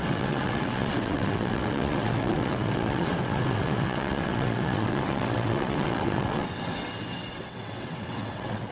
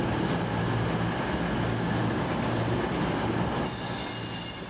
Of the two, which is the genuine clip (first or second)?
second